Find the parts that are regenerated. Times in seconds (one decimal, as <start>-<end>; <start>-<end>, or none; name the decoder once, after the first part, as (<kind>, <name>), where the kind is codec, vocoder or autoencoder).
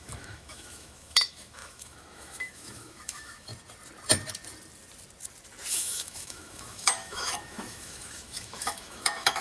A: 0.0-3.5 (autoencoder, DAC-VAE); 5.7-9.4